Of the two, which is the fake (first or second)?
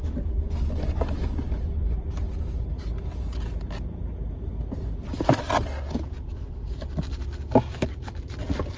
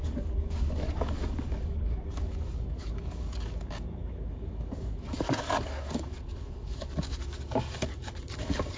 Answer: second